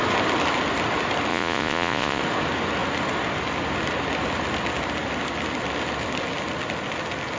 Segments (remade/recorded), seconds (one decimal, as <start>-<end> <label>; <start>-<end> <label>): 0.0-1.3 recorded; 1.3-2.2 remade; 2.2-7.4 recorded